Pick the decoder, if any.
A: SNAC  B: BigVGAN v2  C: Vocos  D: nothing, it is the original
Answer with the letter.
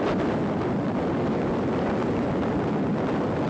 D